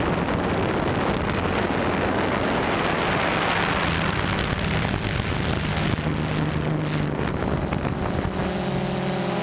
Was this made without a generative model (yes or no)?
yes